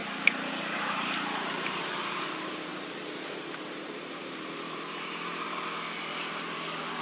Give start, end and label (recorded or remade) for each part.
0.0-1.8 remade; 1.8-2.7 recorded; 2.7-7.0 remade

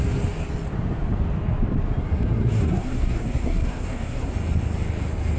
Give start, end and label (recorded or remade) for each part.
0.0-2.0 recorded; 2.0-4.3 remade; 4.3-5.4 recorded

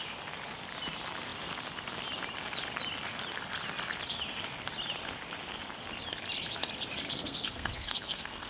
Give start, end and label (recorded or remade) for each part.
0.0-7.2 recorded; 7.2-8.5 remade

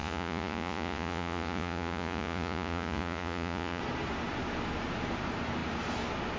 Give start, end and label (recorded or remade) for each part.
0.0-3.8 remade; 3.8-6.4 recorded

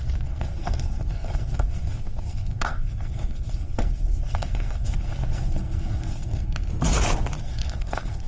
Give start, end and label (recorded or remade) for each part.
0.0-6.7 remade; 6.7-7.4 recorded; 7.4-8.3 remade

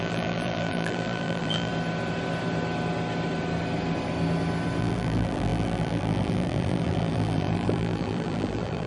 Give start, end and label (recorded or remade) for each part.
0.0-1.7 remade; 1.7-4.8 recorded; 4.8-8.9 remade